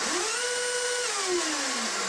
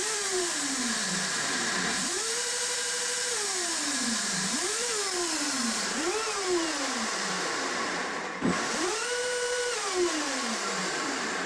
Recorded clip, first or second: first